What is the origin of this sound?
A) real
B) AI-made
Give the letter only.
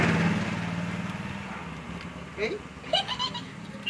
A